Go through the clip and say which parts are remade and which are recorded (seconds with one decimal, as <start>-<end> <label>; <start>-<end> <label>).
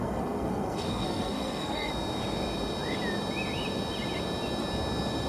0.0-1.9 remade; 1.9-5.3 recorded